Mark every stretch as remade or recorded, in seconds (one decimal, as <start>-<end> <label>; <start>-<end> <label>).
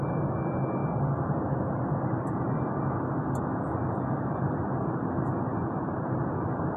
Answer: 0.0-6.8 recorded